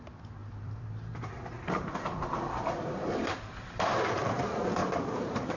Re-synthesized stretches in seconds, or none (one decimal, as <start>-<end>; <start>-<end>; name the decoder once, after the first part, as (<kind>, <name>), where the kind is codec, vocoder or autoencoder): 0.4-3.8 (vocoder, BigVGAN v2); 4.8-5.6